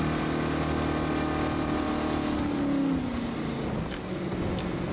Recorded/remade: recorded